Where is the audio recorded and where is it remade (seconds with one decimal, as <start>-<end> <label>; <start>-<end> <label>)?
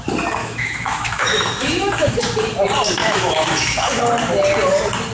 0.0-0.4 recorded; 0.4-2.2 remade; 2.2-3.0 recorded; 3.0-4.0 remade; 4.0-5.1 recorded